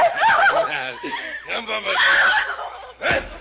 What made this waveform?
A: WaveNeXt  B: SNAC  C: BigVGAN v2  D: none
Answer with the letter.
D